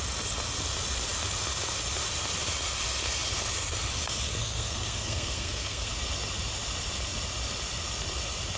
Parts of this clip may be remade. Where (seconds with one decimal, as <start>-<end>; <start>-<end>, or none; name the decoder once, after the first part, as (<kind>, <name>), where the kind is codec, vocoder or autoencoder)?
4.4-5.9 (codec, SNAC)